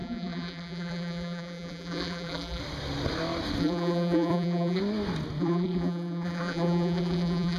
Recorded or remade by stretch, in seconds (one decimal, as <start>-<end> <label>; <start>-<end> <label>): 0.0-2.6 remade; 2.6-3.6 recorded; 3.6-4.8 remade; 4.8-5.4 recorded; 5.4-7.6 remade